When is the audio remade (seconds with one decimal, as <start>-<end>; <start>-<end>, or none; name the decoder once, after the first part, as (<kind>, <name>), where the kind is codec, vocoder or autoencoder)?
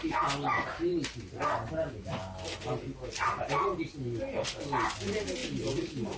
none